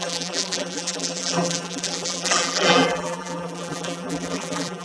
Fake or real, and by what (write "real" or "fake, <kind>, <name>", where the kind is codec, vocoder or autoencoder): fake, vocoder, BigVGAN v2